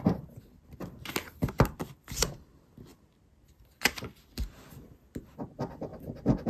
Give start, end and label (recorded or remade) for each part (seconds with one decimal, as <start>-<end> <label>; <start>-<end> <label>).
0.0-6.5 recorded